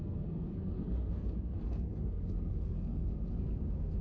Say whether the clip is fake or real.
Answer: fake